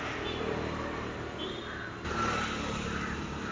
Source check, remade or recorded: recorded